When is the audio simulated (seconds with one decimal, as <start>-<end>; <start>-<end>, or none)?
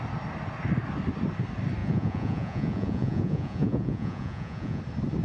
1.8-4.8